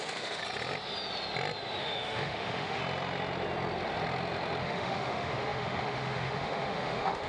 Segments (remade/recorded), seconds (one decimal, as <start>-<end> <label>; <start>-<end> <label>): 0.0-0.4 remade; 0.4-1.8 recorded; 1.8-2.8 remade; 2.8-4.6 recorded; 4.6-7.3 remade